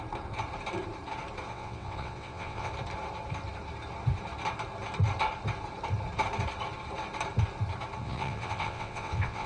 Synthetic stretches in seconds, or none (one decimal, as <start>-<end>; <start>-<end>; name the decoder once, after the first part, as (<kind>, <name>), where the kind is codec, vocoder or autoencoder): 1.5-2.7 (vocoder, WaveNeXt); 8.0-9.5

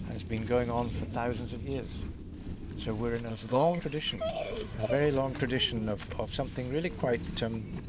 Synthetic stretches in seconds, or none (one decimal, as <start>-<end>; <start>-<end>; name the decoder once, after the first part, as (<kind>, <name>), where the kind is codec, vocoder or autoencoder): 3.3-3.8 (codec, SNAC); 4.3-4.9

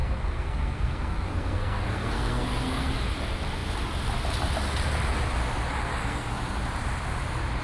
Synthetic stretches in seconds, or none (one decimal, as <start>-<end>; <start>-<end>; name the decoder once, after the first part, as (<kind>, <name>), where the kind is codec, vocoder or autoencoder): 0.0-2.9 (codec, SNAC); 5.8-6.4